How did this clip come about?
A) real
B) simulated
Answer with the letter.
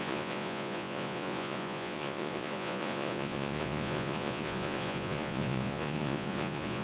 B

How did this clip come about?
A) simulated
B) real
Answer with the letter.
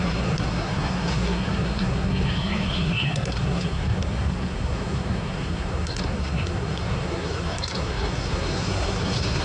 A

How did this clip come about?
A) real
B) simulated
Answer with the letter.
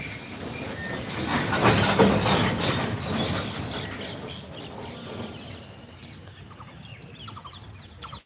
A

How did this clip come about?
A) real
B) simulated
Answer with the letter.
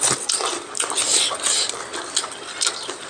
A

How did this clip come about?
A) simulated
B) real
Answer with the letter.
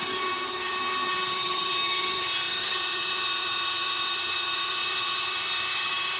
A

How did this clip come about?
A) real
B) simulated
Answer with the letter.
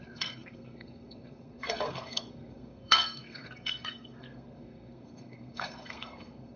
B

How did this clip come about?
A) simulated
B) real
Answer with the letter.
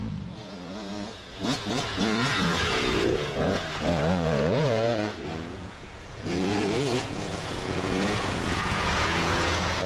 A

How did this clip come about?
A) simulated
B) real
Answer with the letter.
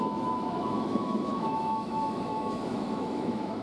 A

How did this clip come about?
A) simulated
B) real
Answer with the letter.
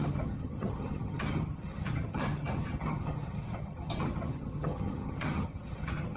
A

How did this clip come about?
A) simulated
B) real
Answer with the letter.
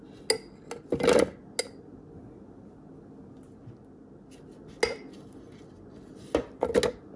B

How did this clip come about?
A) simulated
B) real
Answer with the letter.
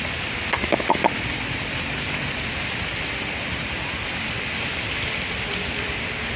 B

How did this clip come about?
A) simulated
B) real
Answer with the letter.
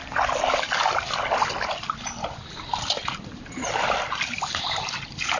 A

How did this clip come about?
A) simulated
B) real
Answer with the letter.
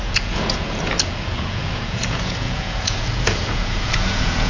A